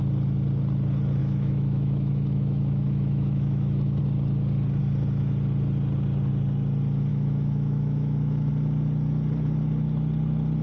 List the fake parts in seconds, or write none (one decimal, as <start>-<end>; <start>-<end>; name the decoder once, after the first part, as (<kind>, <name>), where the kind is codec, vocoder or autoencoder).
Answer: 1.2-4.0 (autoencoder, DAC-VAE); 7.1-8.5